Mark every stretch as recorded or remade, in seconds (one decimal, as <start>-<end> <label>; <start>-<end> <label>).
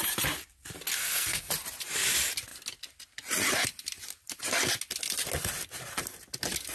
0.0-1.0 recorded; 1.0-1.5 remade; 1.5-6.7 recorded